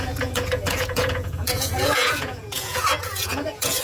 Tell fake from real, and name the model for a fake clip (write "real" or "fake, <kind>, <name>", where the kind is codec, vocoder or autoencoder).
fake, vocoder, Vocos